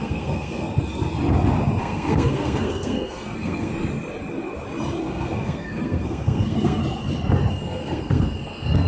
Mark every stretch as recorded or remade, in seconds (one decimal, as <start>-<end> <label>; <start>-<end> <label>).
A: 0.0-0.7 remade; 0.7-1.8 recorded; 1.8-3.7 remade; 3.7-5.0 recorded; 5.0-6.8 remade; 6.8-7.5 recorded; 7.5-8.9 remade